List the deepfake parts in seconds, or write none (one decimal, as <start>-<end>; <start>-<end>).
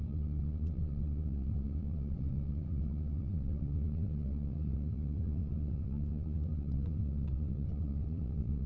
0.0-8.7